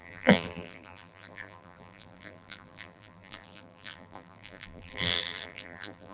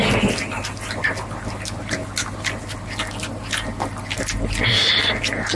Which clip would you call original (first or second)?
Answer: second